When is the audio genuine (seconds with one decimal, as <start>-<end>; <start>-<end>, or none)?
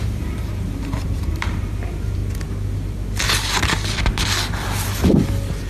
2.2-5.7